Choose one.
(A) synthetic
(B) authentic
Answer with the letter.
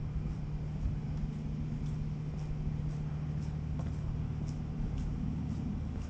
B